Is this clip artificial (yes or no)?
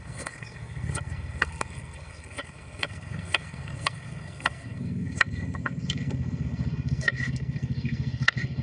yes